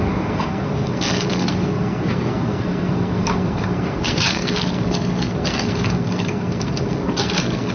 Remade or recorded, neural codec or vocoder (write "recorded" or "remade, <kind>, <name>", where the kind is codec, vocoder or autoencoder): remade, codec, SNAC